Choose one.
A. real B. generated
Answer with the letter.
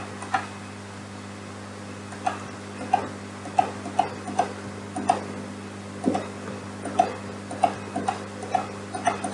A